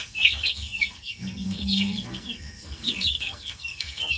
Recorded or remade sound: remade